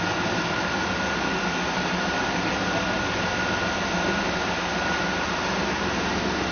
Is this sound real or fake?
real